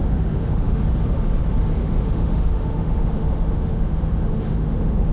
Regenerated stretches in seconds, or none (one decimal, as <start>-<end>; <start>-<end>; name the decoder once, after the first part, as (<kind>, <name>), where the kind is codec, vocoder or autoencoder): 0.0-0.8 (autoencoder, DAC-VAE); 1.8-5.1